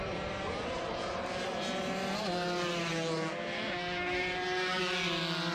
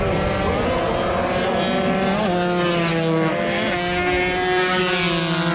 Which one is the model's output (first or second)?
first